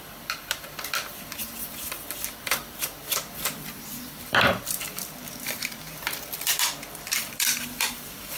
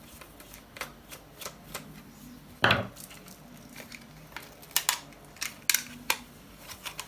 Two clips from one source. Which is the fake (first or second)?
first